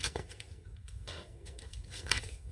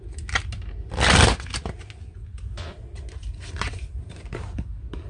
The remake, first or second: first